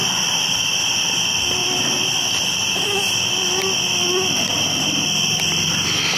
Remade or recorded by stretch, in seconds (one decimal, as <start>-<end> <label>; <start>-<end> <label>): 0.0-6.2 recorded